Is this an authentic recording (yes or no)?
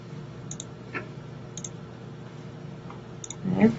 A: yes